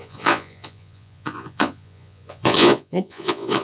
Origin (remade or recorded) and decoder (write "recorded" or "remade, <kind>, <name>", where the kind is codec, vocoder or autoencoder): remade, vocoder, Vocos